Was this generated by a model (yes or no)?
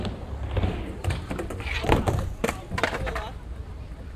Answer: yes